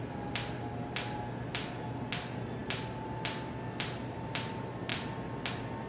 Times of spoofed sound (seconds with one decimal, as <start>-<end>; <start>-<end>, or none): none